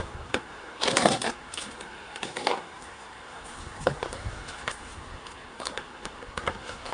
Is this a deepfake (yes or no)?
yes